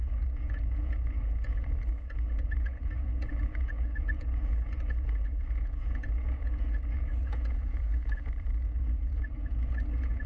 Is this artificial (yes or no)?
yes